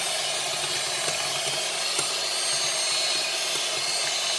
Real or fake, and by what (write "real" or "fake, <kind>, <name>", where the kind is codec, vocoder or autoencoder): real